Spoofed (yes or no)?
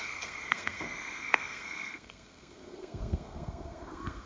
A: yes